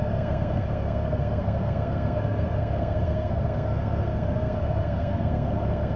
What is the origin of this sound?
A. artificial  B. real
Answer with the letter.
A